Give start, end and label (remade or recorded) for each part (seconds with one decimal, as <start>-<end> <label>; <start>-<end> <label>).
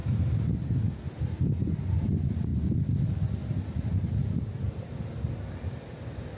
0.0-6.4 recorded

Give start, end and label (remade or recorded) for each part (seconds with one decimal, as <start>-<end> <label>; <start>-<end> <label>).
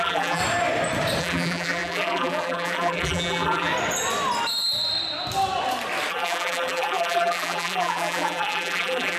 0.0-0.4 remade; 0.4-1.2 recorded; 1.2-3.7 remade; 3.7-6.1 recorded; 6.1-9.2 remade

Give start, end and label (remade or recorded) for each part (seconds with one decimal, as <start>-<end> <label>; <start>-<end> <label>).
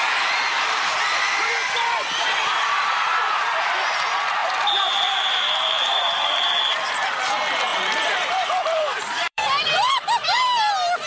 0.0-4.4 recorded; 4.4-7.2 remade; 7.2-7.7 recorded; 7.7-10.7 remade; 10.7-11.1 recorded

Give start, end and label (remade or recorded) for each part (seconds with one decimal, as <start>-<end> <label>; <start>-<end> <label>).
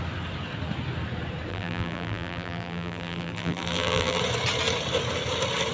0.0-1.5 recorded; 1.5-4.2 remade; 4.2-5.7 recorded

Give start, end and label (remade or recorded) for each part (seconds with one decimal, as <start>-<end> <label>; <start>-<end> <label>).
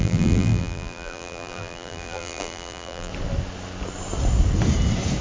0.0-3.1 remade; 3.1-5.2 recorded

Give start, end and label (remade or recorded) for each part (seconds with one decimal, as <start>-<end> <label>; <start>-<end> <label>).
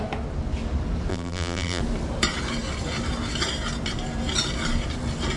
0.0-1.1 recorded; 1.1-1.8 remade; 1.8-5.4 recorded